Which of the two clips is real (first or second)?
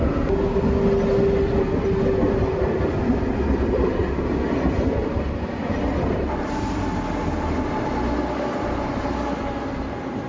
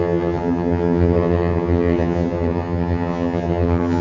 first